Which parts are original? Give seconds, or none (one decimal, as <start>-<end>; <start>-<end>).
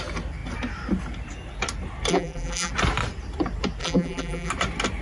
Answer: 0.0-2.1; 2.7-3.8; 4.5-5.0